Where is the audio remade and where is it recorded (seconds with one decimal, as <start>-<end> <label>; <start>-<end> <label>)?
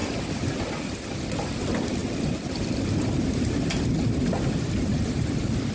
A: 0.0-5.7 recorded